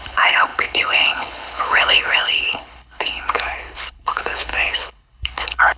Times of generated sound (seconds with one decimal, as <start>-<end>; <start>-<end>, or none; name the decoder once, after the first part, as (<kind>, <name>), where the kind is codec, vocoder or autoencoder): 0.0-5.8 (codec, HILCodec)